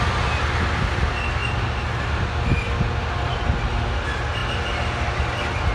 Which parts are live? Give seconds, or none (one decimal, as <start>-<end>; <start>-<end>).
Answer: 0.0-5.7